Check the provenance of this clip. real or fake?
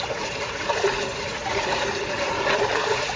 fake